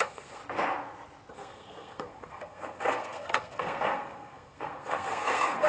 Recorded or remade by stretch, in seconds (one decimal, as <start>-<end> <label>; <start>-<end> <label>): 0.0-0.4 remade; 0.4-1.3 recorded; 1.3-5.7 remade